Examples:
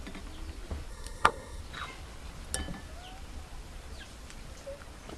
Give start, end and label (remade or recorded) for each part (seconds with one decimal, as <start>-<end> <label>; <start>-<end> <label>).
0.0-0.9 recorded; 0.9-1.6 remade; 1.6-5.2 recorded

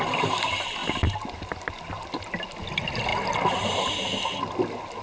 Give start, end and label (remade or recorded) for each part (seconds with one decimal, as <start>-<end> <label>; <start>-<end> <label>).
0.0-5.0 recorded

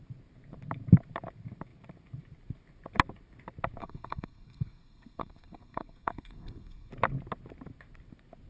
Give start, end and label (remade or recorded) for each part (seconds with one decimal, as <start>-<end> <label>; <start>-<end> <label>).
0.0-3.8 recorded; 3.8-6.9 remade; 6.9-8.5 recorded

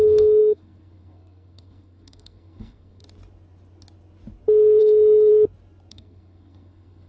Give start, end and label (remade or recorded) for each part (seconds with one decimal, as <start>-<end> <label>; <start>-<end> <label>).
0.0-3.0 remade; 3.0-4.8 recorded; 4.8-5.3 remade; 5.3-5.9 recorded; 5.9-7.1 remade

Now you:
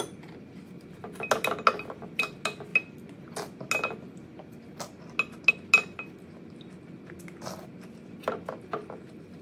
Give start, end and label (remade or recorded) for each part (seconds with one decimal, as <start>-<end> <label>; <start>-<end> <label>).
0.0-9.4 recorded

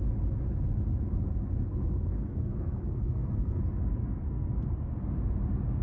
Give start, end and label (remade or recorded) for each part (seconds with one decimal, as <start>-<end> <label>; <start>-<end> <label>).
0.0-1.7 recorded; 1.7-3.6 remade; 3.6-4.0 recorded; 4.0-4.5 remade; 4.5-5.8 recorded

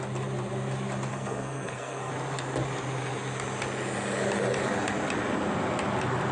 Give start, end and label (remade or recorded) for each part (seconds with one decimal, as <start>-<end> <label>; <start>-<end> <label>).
0.0-1.1 recorded; 1.1-2.1 remade; 2.1-6.3 recorded